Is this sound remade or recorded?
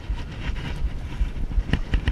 recorded